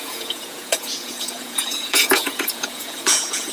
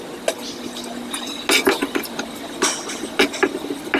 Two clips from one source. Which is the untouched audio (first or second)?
second